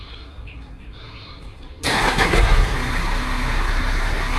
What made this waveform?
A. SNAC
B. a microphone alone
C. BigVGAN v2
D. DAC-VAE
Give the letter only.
A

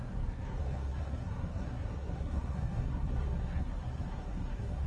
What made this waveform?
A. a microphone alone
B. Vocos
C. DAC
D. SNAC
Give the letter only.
D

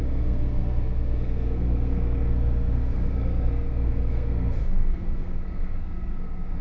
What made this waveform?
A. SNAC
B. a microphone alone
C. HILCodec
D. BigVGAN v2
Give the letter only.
A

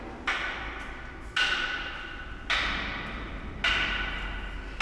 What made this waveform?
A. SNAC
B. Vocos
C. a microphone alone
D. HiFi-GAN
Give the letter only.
C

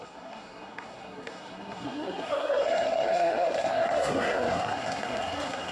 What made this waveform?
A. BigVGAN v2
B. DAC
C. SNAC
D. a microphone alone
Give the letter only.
C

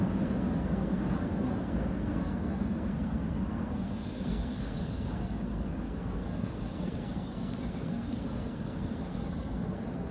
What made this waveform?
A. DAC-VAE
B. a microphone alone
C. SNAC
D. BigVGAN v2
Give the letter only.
C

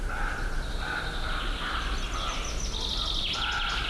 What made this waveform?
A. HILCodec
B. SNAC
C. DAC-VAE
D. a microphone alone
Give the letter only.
D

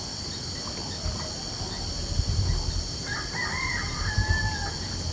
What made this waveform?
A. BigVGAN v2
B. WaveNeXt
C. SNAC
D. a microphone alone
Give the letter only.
D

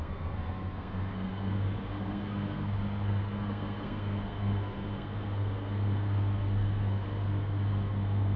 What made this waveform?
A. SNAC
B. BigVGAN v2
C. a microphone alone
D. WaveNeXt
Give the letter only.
A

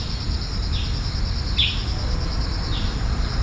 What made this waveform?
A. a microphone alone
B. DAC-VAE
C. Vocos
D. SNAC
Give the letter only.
A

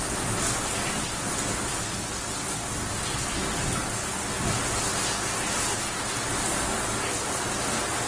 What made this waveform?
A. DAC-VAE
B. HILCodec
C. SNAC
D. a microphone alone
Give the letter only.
D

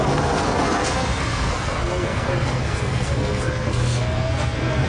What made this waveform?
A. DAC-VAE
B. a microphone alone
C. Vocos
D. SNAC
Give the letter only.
D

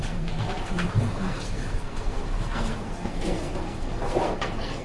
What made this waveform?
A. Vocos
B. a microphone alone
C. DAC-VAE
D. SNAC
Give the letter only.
D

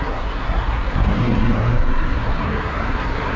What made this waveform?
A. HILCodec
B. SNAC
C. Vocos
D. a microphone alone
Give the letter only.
B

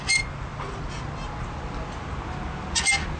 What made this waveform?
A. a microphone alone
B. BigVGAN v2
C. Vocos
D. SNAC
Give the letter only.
A